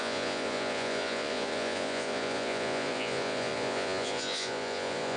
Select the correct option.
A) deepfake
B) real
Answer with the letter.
A